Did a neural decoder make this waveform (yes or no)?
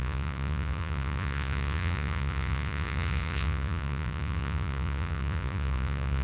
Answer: yes